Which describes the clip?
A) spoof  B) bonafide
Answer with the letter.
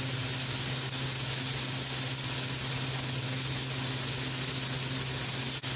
B